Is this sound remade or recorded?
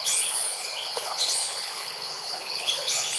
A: remade